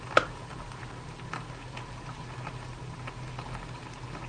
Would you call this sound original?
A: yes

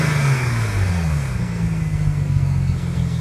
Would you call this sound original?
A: no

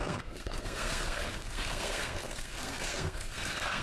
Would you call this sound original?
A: no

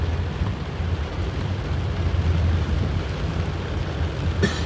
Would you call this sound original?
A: yes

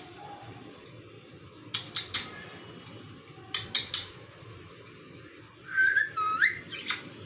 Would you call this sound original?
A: yes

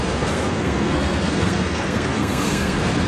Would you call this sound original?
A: no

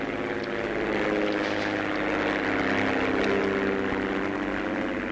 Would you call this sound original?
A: yes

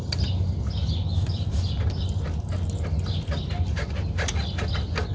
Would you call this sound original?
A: yes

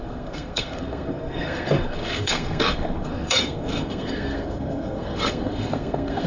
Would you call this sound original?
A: no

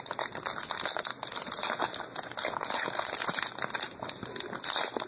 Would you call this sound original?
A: yes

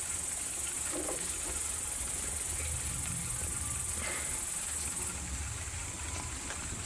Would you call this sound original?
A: yes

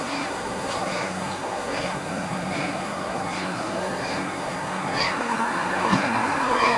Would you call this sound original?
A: no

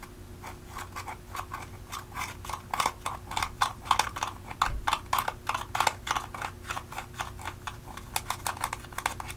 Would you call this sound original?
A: yes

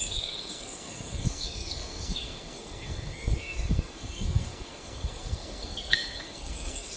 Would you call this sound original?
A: no